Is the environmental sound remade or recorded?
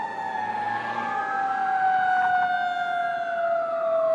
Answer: recorded